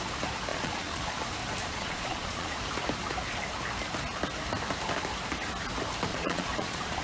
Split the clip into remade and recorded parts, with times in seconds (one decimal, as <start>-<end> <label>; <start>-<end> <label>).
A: 0.0-0.5 recorded; 0.5-1.2 remade; 1.2-1.6 recorded; 1.6-2.6 remade; 2.6-6.1 recorded; 6.1-7.0 remade